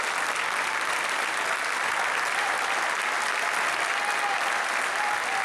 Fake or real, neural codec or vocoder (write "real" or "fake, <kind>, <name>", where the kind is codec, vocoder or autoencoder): real